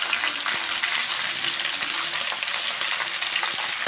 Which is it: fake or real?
real